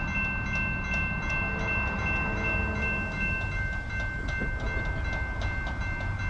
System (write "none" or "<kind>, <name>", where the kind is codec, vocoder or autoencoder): none